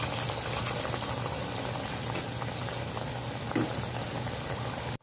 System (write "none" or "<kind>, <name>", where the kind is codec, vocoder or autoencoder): none